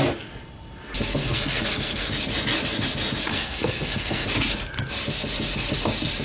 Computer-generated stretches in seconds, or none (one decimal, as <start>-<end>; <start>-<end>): 1.2-2.1; 3.3-4.3